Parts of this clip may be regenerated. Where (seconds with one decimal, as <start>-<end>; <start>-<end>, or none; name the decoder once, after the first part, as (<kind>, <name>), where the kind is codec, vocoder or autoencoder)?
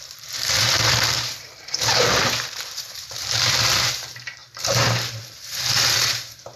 0.0-6.6 (vocoder, BigVGAN v2)